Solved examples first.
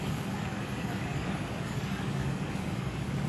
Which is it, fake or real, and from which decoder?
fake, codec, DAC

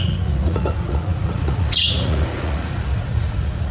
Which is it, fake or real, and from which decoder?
fake, vocoder, Vocos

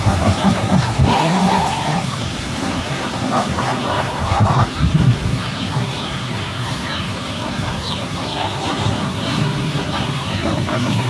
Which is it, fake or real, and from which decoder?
fake, codec, SNAC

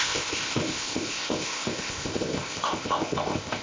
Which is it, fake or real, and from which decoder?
fake, codec, ZipCodec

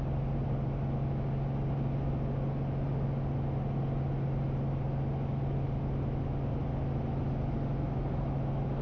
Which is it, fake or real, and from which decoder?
real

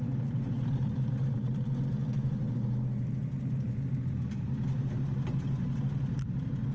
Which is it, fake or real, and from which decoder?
real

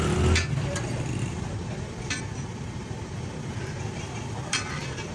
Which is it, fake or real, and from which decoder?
real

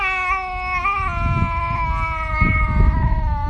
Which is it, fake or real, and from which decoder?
real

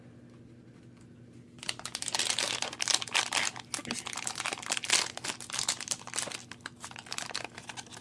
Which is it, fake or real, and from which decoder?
real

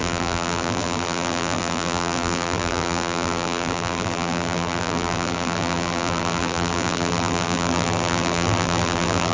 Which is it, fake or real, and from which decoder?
fake, vocoder, BigVGAN v2